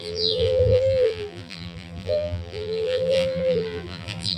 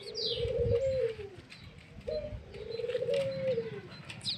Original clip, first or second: second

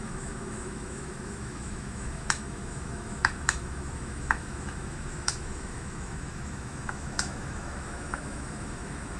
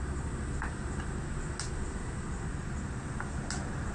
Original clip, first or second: second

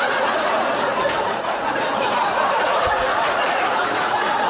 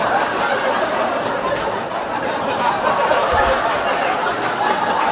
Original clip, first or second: second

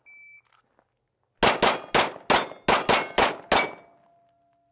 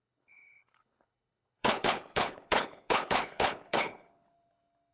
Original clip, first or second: first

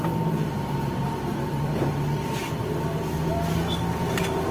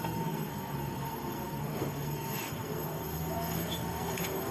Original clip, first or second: first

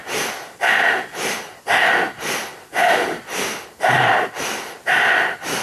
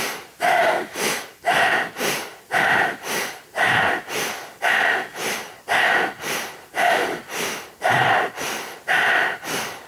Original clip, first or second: first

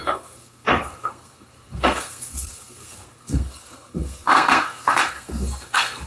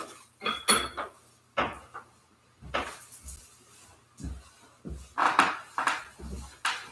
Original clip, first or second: second